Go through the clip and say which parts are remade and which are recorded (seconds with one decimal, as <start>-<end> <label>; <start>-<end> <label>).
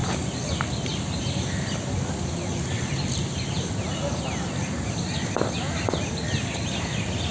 0.0-7.3 recorded